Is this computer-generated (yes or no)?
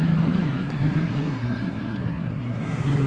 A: yes